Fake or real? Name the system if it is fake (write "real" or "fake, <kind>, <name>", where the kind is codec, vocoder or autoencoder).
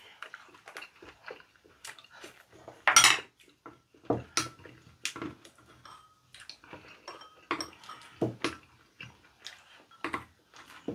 real